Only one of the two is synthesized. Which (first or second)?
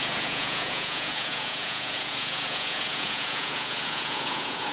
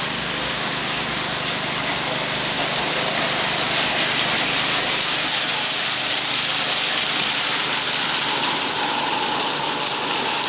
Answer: first